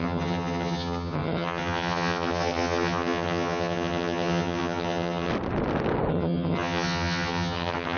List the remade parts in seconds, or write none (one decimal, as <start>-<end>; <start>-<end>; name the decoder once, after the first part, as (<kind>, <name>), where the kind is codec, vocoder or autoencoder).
0.0-5.3 (vocoder, HiFi-GAN); 6.1-8.0